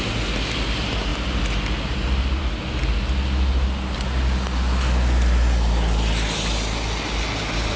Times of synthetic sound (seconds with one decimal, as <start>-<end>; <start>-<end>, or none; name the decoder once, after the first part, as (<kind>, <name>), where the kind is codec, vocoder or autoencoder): none